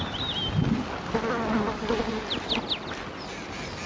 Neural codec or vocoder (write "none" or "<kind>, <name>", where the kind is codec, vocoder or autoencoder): none